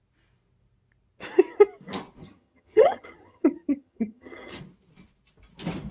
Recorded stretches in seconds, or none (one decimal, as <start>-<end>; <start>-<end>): 0.0-2.2; 4.6-5.9